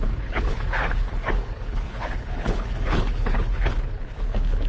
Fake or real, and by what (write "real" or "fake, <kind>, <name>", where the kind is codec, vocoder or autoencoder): fake, codec, HILCodec